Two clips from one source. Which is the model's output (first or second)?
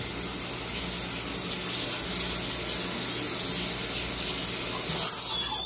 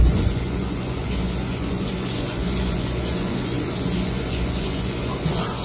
second